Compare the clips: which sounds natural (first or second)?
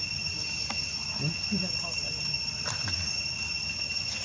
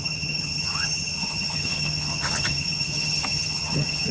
first